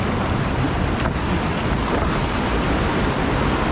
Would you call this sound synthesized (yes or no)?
no